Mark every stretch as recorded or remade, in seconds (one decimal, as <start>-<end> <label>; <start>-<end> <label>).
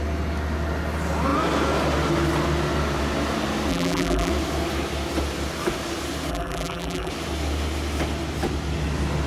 0.0-3.7 recorded; 3.7-4.3 remade; 4.3-6.3 recorded; 6.3-7.1 remade; 7.1-9.3 recorded